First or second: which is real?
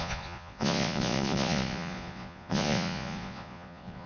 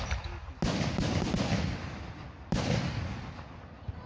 second